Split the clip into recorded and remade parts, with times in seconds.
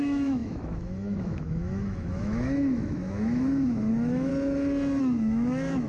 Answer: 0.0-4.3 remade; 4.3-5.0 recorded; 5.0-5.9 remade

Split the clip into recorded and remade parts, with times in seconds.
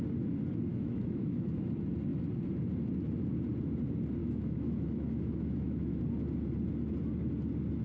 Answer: 0.0-0.7 recorded; 0.7-1.7 remade; 1.7-4.2 recorded; 4.2-6.0 remade; 6.0-7.8 recorded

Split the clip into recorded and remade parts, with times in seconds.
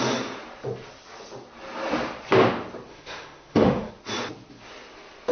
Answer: 0.0-2.9 recorded; 2.9-3.9 remade; 3.9-5.3 recorded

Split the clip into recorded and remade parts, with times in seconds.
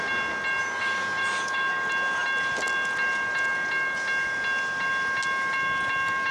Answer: 0.0-0.6 recorded; 0.6-1.7 remade; 1.7-6.3 recorded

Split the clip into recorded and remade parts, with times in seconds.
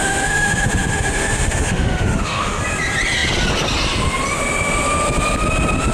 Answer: 0.0-2.6 remade; 2.6-5.9 recorded